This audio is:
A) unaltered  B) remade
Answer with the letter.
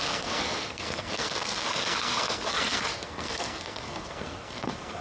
B